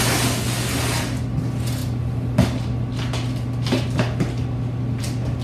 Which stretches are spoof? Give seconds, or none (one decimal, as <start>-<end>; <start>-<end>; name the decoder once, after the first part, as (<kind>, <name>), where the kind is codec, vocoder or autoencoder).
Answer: none